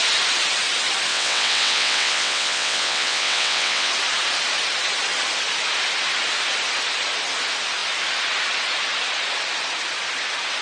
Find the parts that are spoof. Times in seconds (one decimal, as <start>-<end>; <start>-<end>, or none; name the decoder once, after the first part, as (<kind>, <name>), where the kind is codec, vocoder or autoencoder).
1.1-3.9 (vocoder, WaveNeXt)